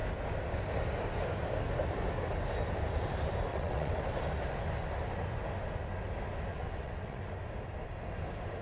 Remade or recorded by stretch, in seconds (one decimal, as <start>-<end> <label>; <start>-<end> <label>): 0.0-3.5 recorded; 3.5-4.0 remade; 4.0-6.5 recorded; 6.5-7.2 remade; 7.2-8.6 recorded